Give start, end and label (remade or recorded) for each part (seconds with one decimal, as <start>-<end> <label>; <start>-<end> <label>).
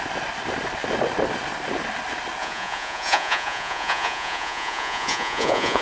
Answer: 0.0-2.4 recorded; 2.4-5.8 remade